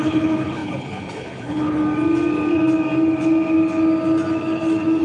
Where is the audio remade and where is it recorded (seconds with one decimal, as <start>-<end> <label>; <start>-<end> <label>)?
0.0-1.8 remade; 1.8-5.0 recorded